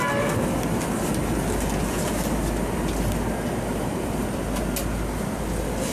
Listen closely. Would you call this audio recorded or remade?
recorded